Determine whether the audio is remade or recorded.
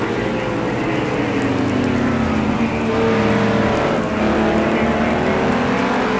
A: recorded